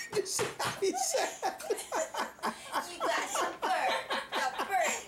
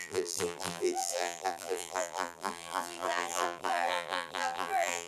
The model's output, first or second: second